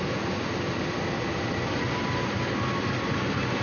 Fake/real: real